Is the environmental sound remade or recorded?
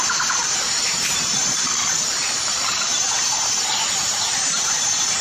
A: remade